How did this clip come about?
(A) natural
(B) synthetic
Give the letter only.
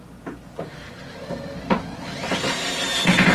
A